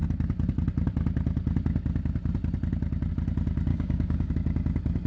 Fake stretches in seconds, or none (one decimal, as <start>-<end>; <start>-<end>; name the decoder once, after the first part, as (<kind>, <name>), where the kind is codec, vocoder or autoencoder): 3.7-4.3 (codec, DAC)